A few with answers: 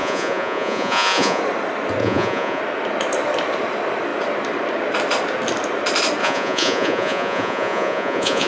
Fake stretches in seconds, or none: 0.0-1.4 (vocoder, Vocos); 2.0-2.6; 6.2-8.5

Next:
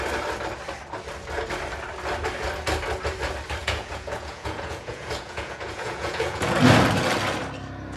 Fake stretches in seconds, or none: 3.6-6.6 (vocoder, Vocos)